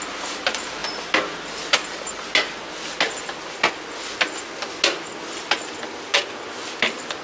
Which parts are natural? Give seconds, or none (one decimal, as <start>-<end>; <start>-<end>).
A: 0.0-7.2